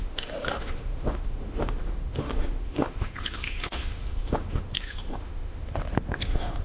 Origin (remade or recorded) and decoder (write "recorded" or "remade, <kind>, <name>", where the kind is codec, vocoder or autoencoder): remade, autoencoder, DAC-VAE